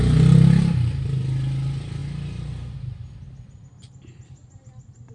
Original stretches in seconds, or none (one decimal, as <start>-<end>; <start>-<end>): 0.0-5.1